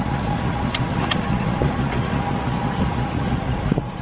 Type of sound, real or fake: fake